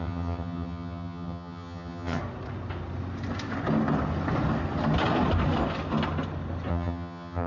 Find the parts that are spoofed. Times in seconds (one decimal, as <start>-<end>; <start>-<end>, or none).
0.0-2.2; 6.7-7.5